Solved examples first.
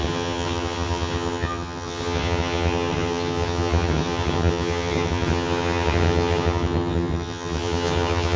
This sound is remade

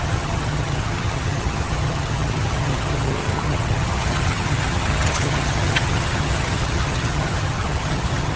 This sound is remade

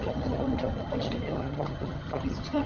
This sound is remade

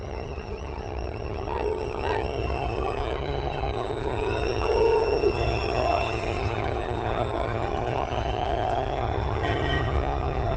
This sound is remade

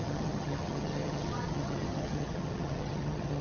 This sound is remade